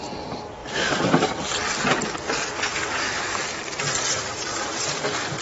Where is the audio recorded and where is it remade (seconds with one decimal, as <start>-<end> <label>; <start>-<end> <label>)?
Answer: 0.0-0.6 recorded; 0.6-1.3 remade; 1.3-2.7 recorded; 2.7-3.6 remade; 3.6-5.4 recorded